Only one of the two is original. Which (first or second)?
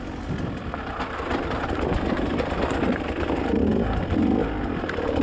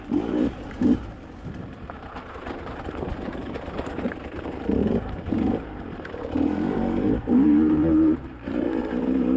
first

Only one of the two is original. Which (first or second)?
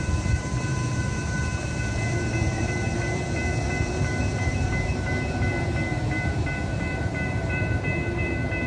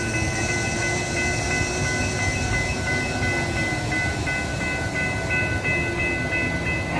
second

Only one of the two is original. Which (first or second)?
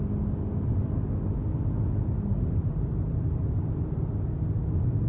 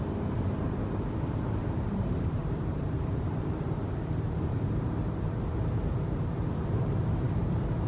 first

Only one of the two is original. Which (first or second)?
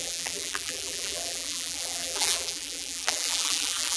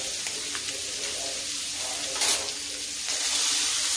second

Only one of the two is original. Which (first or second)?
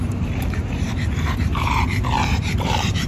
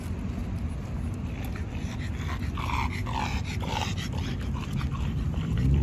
second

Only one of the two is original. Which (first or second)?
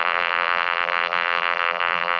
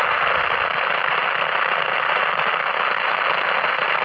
second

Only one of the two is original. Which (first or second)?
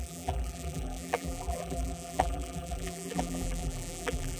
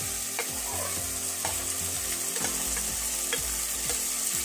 second